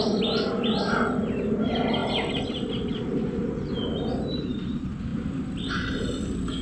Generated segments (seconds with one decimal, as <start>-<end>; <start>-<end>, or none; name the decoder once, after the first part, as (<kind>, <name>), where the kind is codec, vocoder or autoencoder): none